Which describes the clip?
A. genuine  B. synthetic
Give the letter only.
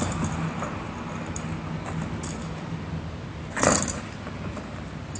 A